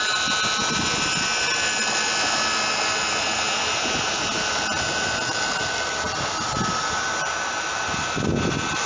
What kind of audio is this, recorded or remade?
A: recorded